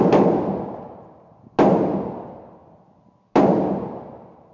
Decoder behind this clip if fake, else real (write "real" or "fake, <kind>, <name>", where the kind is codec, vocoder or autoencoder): real